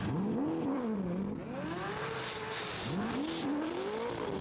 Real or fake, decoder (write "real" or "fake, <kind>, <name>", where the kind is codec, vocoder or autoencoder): real